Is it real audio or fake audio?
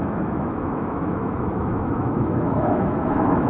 fake